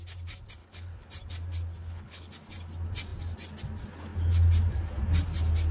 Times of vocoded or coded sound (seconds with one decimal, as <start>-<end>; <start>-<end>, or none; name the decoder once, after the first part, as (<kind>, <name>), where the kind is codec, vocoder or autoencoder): 0.6-1.1 (codec, HILCodec); 1.8-2.3